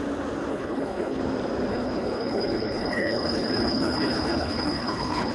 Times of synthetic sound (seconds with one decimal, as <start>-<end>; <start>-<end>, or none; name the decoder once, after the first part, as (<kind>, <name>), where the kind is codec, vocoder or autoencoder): 0.5-1.2 (codec, HILCodec); 1.7-5.3